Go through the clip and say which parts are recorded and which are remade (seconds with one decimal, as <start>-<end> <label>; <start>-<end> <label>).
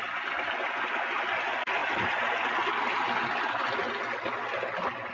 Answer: 0.0-5.1 recorded